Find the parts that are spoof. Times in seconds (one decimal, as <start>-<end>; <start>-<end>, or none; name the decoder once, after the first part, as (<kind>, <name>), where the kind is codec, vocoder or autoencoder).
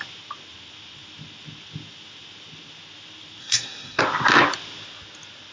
3.4-4.0 (codec, SNAC)